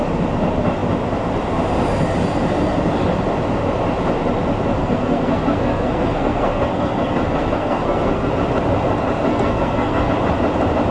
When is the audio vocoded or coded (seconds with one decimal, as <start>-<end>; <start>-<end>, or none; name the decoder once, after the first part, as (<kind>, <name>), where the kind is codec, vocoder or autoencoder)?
4.8-8.3 (codec, SNAC); 9.3-10.1